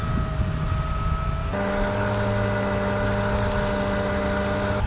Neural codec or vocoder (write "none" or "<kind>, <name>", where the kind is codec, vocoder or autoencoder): none